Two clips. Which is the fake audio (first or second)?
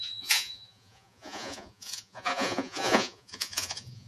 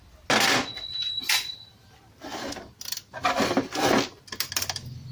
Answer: first